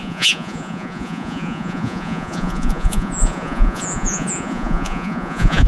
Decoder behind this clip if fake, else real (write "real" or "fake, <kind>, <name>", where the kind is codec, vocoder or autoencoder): fake, vocoder, Vocos